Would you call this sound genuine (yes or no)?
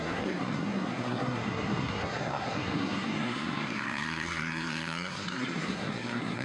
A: no